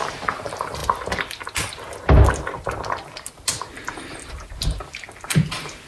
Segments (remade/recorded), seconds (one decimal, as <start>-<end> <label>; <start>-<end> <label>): 0.0-0.8 remade; 0.8-4.3 recorded; 4.3-5.9 remade